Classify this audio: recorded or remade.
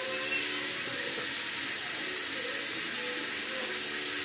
recorded